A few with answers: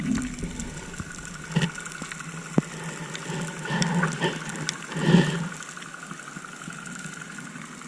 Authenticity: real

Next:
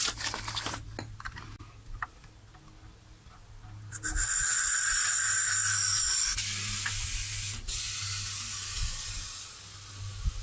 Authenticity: real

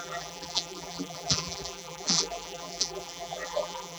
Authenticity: fake